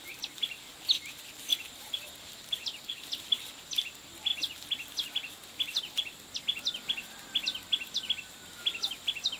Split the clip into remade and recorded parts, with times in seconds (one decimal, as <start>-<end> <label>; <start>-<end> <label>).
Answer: 0.0-1.5 recorded; 1.5-3.2 remade; 3.2-9.4 recorded